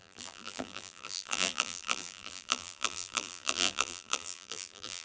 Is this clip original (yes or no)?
no